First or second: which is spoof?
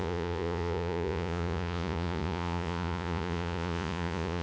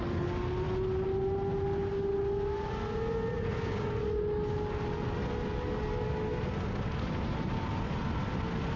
first